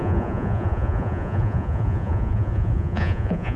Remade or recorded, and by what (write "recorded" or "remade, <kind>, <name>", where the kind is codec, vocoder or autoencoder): remade, vocoder, Vocos